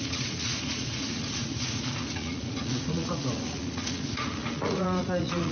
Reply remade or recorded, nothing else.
remade